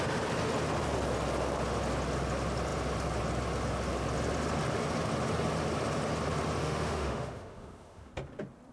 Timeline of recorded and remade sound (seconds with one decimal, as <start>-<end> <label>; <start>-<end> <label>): 0.0-6.6 recorded; 6.6-8.1 remade; 8.1-8.7 recorded

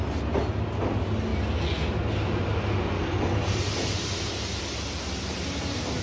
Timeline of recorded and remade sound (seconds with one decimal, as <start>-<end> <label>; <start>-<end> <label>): 0.0-6.0 recorded